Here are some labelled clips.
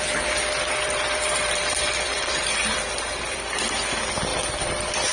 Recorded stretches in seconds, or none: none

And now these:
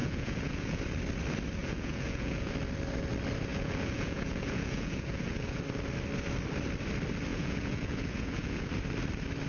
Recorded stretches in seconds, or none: 0.8-1.6; 2.5-3.5; 5.6-7.3; 8.7-9.5

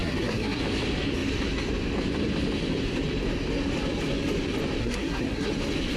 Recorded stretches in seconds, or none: 0.6-4.8; 5.5-6.0

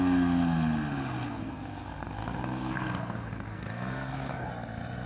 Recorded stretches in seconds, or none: 0.0-1.4; 4.5-5.1

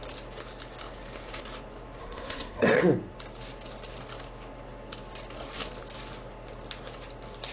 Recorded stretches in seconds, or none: 0.0-2.0; 2.8-7.5

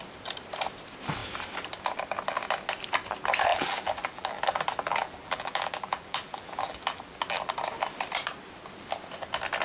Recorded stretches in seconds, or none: 0.0-3.5; 7.5-9.6

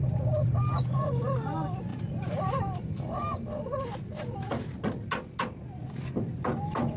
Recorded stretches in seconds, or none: 0.0-1.9; 3.1-7.0

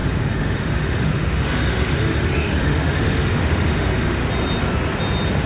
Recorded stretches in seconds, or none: 4.2-5.5